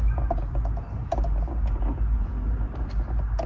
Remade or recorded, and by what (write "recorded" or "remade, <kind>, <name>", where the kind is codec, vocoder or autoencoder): recorded